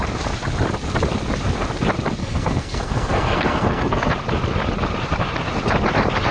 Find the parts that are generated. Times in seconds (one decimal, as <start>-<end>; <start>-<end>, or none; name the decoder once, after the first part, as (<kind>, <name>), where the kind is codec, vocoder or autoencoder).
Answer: 2.2-4.1 (codec, SNAC)